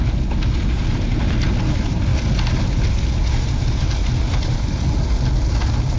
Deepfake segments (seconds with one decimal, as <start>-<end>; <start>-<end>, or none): none